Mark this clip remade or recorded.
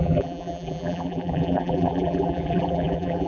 remade